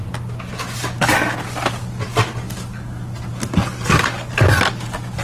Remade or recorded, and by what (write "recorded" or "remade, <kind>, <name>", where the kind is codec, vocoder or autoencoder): recorded